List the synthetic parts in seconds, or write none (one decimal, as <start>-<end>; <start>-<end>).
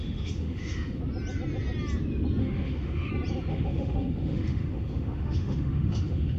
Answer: 0.0-1.0; 2.4-3.1; 3.5-6.4